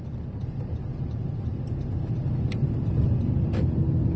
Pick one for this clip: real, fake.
real